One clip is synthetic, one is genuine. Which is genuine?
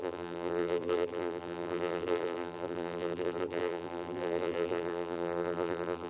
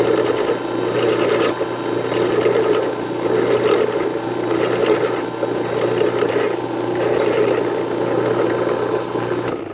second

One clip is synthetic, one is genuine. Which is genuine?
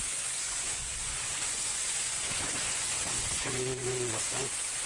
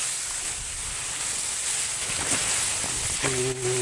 second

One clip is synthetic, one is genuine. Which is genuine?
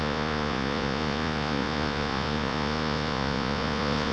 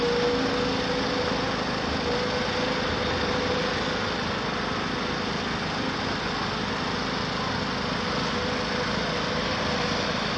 second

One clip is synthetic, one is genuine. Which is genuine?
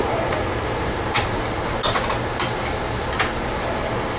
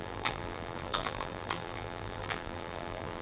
first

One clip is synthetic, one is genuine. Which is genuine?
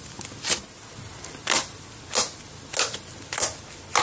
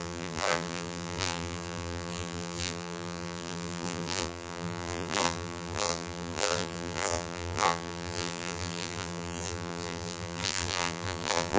first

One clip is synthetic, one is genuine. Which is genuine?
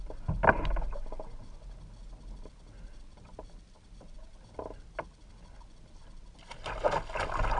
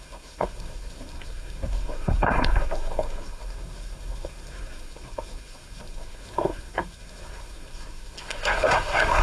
first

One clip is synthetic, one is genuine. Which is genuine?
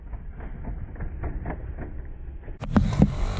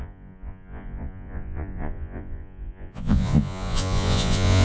first